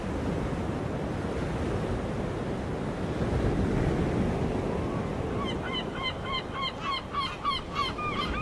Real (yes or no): yes